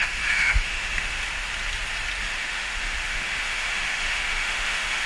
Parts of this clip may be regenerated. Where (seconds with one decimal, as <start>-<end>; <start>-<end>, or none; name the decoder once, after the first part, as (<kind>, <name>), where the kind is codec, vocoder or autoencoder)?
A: 0.0-1.2 (autoencoder, DAC-VAE); 2.2-5.1